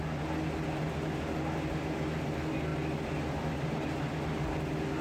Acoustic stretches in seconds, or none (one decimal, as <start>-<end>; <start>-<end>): 0.0-5.0